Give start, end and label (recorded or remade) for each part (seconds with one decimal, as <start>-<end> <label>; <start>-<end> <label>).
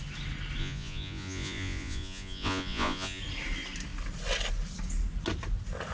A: 0.0-0.6 recorded; 0.6-3.2 remade; 3.2-5.9 recorded